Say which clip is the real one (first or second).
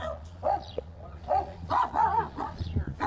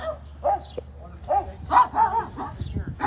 second